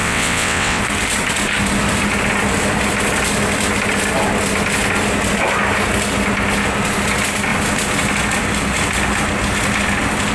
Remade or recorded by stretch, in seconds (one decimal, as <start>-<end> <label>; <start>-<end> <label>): 0.0-0.8 remade; 0.8-10.3 recorded